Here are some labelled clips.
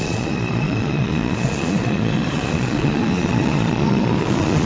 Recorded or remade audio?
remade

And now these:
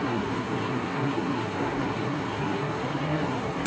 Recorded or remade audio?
remade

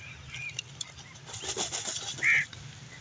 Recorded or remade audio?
recorded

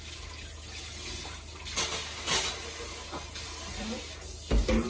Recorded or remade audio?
recorded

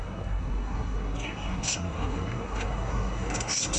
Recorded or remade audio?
remade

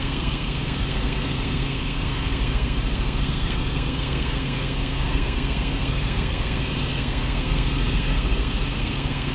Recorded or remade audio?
remade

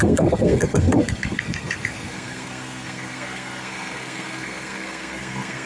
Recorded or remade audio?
remade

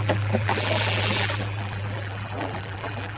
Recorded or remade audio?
remade